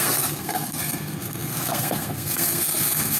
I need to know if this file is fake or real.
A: fake